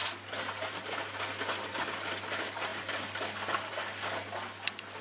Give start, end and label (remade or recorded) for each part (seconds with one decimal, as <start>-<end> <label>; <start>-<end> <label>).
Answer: 0.0-5.0 recorded